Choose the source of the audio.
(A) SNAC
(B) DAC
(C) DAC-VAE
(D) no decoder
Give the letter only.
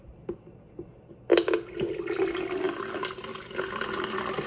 D